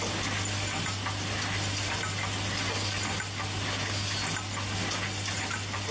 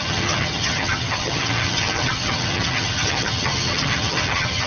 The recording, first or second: first